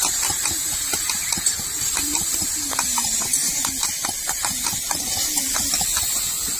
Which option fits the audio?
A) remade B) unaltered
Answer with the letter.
B